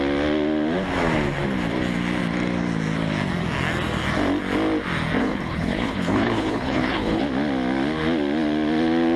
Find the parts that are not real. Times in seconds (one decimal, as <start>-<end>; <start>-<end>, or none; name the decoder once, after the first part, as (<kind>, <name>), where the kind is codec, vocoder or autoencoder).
5.2-7.2 (codec, HILCodec)